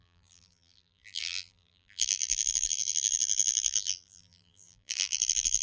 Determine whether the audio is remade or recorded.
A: remade